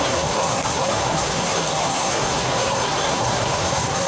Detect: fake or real fake